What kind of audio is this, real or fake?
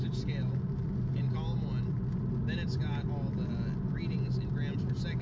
real